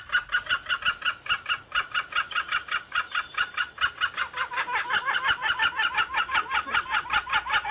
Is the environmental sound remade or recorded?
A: recorded